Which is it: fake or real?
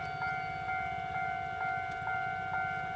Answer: real